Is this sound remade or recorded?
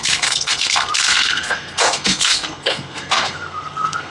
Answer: remade